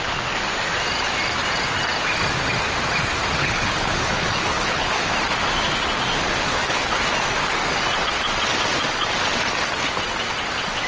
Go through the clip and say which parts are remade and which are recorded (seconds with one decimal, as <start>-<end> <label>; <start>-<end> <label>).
0.0-3.4 recorded; 3.4-5.1 remade; 5.1-6.5 recorded; 6.5-7.0 remade; 7.0-10.9 recorded